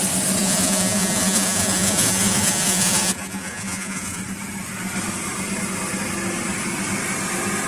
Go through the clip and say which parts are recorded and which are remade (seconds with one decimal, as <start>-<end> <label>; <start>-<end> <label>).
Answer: 0.0-0.4 recorded; 0.4-4.2 remade; 4.2-7.7 recorded